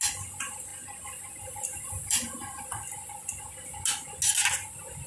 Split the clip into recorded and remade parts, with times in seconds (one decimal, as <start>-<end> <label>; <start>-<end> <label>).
0.0-0.7 recorded; 0.7-3.4 remade; 3.4-5.1 recorded